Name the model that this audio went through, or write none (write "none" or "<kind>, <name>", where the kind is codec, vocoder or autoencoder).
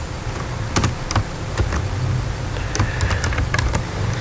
none